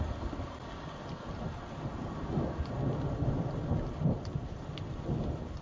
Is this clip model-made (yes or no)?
no